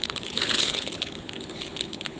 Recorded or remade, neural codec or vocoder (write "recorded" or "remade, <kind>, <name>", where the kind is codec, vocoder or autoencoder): remade, codec, HILCodec